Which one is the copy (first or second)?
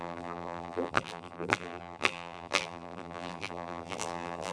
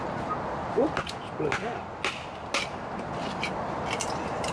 first